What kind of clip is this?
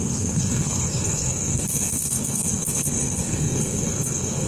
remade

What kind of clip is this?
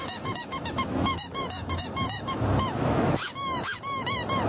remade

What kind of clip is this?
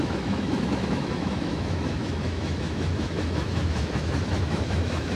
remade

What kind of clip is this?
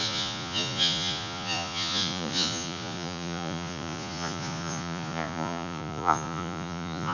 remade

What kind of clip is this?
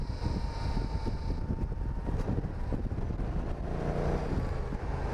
recorded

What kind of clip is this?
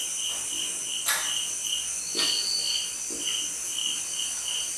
recorded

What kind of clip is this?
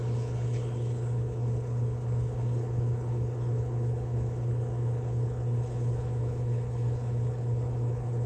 remade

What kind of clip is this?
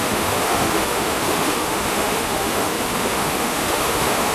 remade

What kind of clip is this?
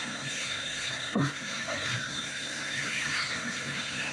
remade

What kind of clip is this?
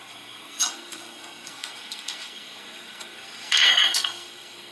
remade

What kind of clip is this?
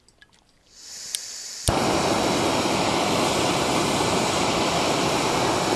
recorded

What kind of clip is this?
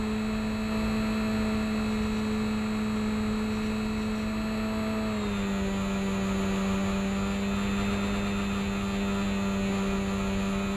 recorded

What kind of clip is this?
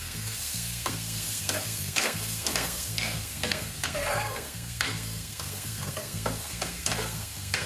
remade